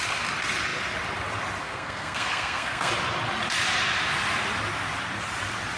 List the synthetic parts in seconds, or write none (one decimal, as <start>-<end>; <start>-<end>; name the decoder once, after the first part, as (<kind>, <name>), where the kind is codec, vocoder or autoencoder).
1.6-2.9 (codec, SNAC)

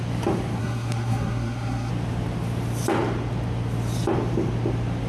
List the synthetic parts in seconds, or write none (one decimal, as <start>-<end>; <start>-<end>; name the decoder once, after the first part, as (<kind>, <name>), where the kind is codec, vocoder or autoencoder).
0.6-1.9 (codec, SNAC)

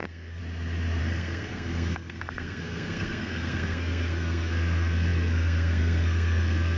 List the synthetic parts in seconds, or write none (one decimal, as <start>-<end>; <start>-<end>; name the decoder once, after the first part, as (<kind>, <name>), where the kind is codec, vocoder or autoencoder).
0.0-0.4 (codec, SNAC); 1.0-6.8

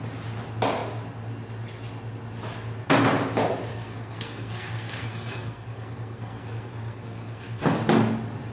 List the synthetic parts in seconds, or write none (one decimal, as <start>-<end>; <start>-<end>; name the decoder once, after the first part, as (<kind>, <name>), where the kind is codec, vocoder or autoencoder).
3.7-7.6 (codec, SNAC)

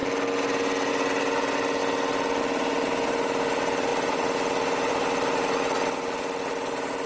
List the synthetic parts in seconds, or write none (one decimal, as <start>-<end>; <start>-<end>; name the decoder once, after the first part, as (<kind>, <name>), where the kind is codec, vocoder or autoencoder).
none

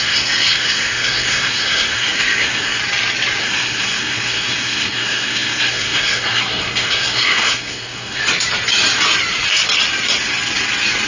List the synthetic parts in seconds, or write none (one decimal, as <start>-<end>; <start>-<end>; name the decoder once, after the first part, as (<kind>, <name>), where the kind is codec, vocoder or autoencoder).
0.0-2.8 (codec, SNAC); 3.4-8.2

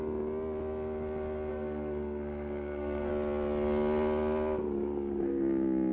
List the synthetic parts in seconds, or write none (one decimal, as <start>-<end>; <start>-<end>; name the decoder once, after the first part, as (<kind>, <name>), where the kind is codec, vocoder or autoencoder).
1.5-3.1 (codec, SNAC)

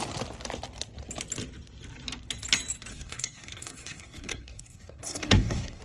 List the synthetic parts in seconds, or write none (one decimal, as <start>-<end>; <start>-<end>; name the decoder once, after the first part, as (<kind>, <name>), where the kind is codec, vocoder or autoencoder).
2.9-5.8 (codec, SNAC)